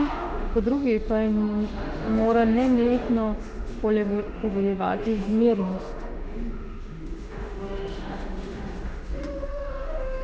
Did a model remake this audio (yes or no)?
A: yes